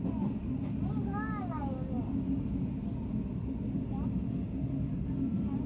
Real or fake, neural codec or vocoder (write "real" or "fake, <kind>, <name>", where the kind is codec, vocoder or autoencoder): real